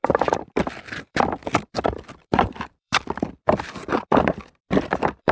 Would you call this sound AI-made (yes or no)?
yes